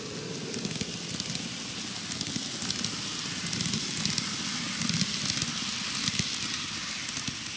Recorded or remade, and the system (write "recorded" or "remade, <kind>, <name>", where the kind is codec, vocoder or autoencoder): recorded